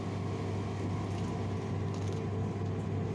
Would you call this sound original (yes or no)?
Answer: yes